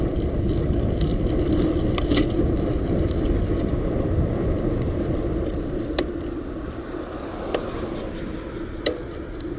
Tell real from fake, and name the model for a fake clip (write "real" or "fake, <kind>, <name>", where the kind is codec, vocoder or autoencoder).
real